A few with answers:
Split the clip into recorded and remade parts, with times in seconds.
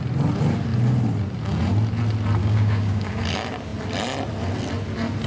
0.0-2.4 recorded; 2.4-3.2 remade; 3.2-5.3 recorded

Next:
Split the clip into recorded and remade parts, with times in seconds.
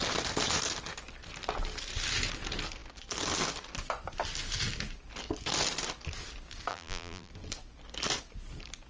0.0-6.7 recorded; 6.7-7.3 remade; 7.3-8.9 recorded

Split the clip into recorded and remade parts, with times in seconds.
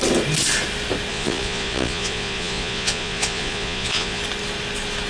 0.0-1.1 recorded; 1.1-4.2 remade; 4.2-5.1 recorded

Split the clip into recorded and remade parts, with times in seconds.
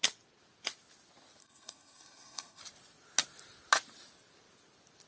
0.0-1.4 recorded; 1.4-2.6 remade; 2.6-5.1 recorded